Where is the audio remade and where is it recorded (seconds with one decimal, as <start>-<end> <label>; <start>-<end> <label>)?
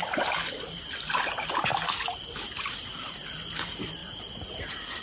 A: 0.0-5.0 recorded